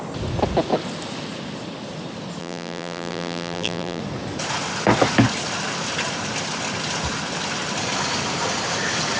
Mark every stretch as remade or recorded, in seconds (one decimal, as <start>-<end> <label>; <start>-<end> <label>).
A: 0.0-2.4 recorded; 2.4-4.0 remade; 4.0-9.2 recorded